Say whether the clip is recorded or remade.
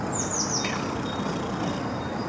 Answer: recorded